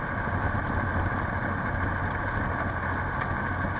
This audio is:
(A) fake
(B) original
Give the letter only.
B